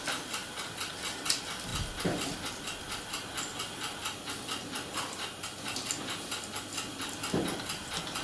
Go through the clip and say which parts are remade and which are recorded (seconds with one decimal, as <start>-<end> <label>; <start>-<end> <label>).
0.0-8.2 recorded